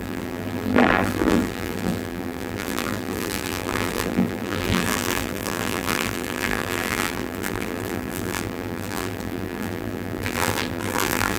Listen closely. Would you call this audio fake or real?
fake